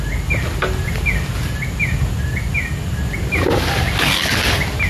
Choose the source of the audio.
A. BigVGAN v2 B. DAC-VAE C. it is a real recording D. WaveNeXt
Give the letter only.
C